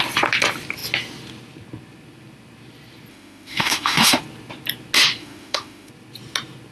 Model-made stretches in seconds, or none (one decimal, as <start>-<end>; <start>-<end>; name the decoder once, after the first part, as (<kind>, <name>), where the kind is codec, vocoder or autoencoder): 3.1-4.2 (autoencoder, DAC-VAE); 5.2-5.9